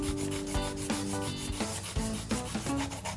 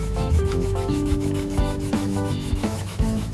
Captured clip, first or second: first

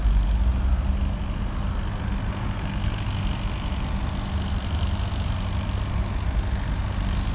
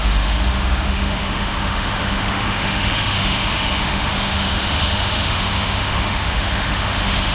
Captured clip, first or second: first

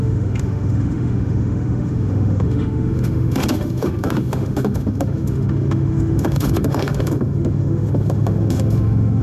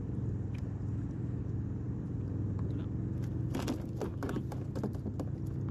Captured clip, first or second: second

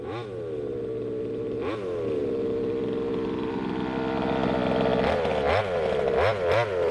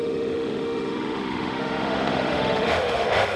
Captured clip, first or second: first